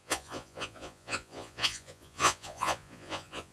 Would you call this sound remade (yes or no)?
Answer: yes